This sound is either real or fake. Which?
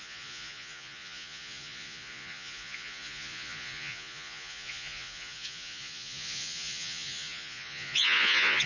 fake